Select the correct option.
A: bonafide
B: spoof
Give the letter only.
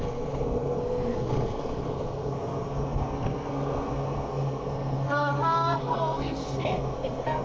B